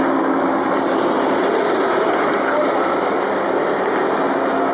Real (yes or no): yes